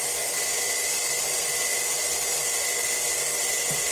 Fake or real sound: real